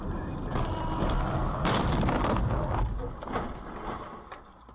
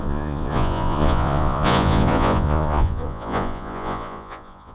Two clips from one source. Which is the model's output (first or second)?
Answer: second